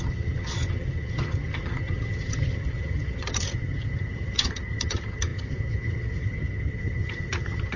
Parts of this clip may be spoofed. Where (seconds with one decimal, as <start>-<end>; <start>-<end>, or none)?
0.0-7.8

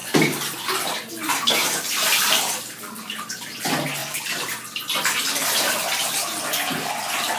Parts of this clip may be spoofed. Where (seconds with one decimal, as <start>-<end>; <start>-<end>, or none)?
1.6-3.3; 4.0-5.2

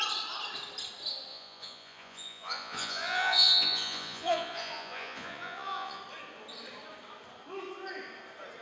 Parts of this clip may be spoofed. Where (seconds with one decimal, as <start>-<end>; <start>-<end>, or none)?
1.3-6.0

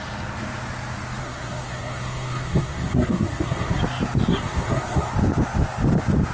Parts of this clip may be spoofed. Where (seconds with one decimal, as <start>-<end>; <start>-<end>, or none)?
1.2-3.8; 4.3-5.1

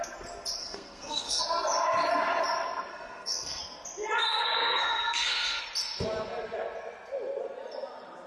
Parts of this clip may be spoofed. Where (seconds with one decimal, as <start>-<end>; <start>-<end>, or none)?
0.6-1.4; 2.9-3.6; 4.2-5.6

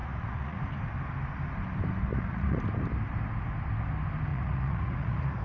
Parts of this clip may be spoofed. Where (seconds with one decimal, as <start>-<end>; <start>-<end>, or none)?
0.0-0.6; 2.1-2.6; 4.3-5.4

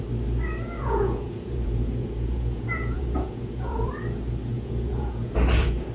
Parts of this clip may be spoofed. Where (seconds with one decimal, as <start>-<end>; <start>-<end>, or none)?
0.8-3.9; 4.5-5.3